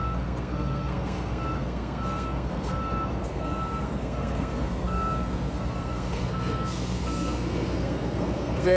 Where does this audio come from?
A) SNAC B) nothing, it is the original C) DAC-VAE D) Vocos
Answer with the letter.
A